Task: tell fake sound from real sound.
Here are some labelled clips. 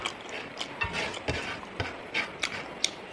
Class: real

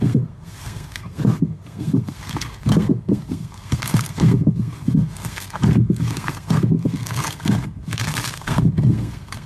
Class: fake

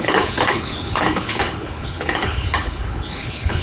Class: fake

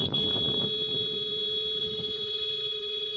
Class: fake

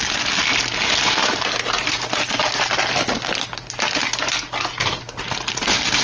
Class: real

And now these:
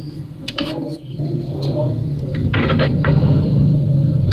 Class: fake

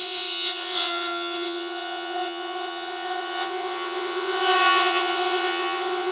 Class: fake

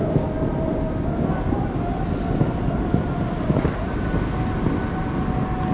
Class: real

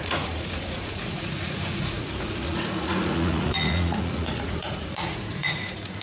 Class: fake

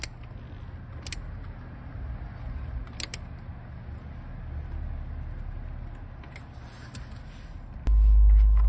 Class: real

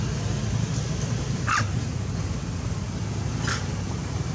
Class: real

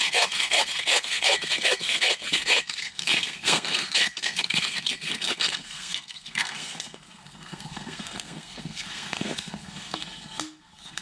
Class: fake